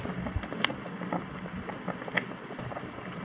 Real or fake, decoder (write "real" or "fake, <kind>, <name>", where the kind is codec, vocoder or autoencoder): real